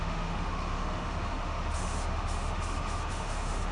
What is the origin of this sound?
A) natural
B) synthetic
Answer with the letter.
B